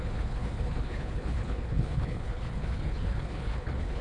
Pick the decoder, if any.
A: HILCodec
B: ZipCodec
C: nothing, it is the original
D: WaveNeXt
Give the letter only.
A